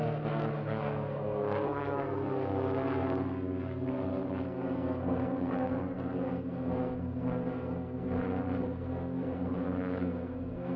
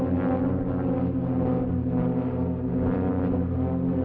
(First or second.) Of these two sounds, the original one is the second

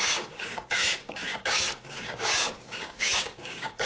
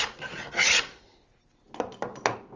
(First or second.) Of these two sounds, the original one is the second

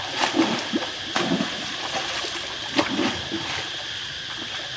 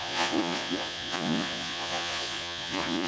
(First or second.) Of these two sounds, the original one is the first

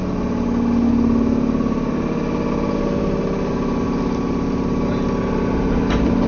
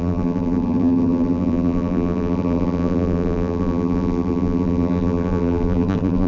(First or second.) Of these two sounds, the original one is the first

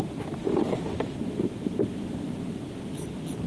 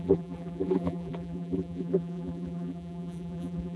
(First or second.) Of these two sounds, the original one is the first